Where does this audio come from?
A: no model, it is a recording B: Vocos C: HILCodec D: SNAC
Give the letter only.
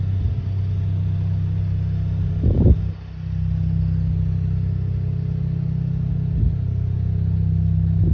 A